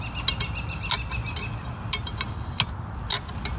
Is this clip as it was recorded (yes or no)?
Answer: yes